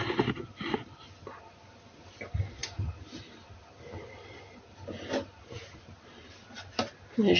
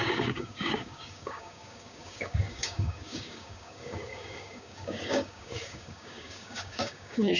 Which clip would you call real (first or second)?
first